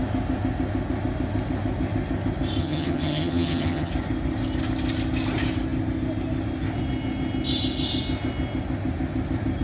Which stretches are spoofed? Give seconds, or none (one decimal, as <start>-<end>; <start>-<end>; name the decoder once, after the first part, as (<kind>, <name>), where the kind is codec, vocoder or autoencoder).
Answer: 2.6-3.9 (vocoder, HiFi-GAN)